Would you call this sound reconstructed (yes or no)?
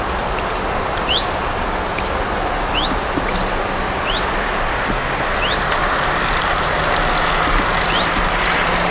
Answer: no